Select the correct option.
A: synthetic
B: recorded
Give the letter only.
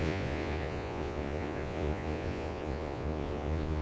A